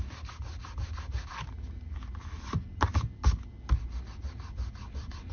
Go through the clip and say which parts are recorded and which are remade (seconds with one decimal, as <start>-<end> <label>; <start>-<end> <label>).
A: 0.0-5.3 recorded